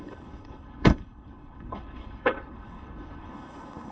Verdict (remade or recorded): remade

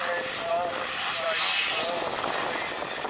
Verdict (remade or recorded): recorded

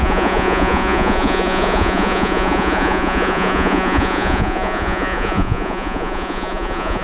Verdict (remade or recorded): remade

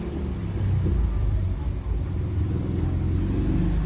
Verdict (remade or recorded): recorded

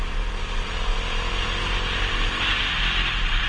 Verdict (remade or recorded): recorded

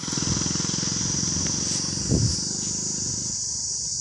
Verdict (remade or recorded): recorded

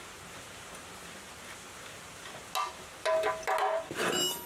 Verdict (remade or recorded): recorded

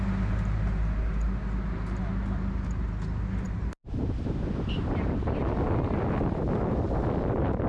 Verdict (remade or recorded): recorded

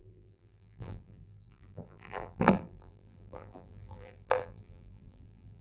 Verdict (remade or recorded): remade